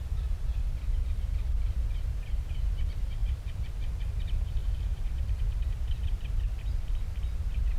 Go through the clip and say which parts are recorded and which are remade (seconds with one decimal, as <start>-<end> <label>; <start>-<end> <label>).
0.0-7.8 remade